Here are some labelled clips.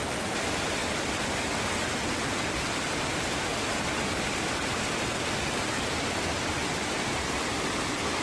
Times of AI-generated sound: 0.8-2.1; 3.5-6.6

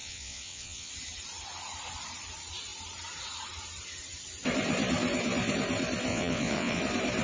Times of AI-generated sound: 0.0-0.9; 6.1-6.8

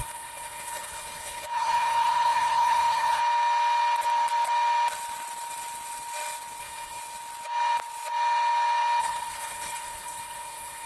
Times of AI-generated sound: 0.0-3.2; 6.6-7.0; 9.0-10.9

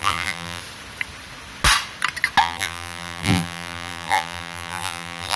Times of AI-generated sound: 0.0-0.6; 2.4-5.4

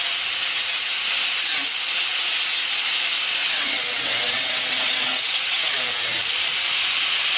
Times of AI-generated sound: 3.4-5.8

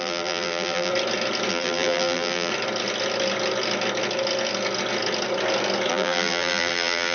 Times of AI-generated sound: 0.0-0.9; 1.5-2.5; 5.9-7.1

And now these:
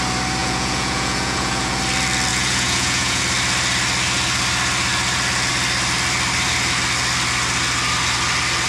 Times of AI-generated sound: 0.4-1.8; 2.3-3.2